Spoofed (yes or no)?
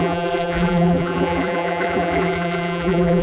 yes